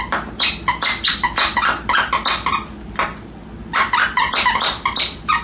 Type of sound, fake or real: real